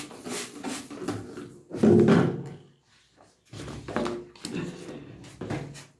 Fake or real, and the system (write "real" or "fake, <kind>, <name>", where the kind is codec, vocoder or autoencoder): real